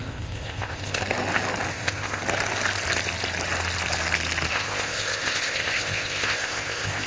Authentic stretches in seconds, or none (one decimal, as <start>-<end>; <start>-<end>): 1.0-1.7; 2.2-4.5